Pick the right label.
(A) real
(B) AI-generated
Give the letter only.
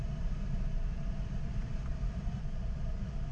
A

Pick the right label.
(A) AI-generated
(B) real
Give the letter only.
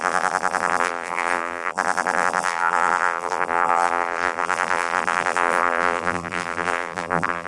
A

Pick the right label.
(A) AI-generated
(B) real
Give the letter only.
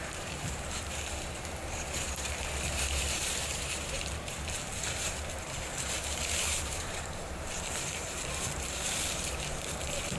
A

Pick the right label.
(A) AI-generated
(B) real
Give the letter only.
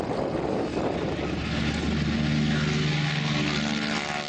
B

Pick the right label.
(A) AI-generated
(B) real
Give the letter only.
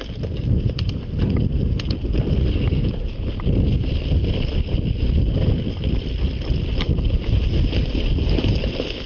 B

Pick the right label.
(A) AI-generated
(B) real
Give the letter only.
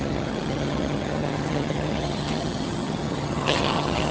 A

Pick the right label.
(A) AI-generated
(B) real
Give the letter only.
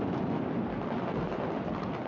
B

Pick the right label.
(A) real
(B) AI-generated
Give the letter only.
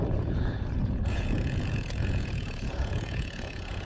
B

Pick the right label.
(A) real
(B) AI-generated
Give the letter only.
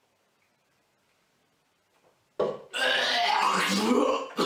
A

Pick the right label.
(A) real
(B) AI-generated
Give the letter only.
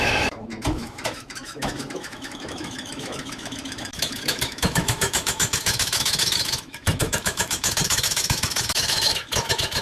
B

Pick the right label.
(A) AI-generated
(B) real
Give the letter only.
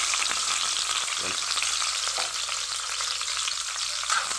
B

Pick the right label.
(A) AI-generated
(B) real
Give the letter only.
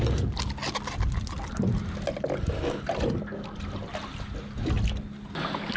B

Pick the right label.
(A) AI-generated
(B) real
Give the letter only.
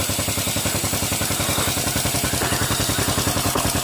B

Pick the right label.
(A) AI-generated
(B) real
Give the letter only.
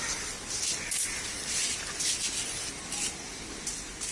B